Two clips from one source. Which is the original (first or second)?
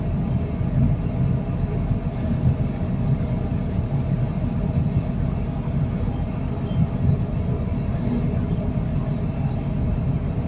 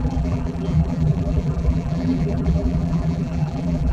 first